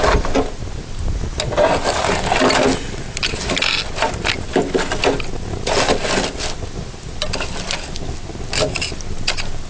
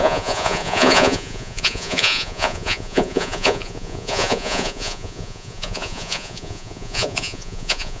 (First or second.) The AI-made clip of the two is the second